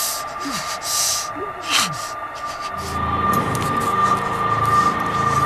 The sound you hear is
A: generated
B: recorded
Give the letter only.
B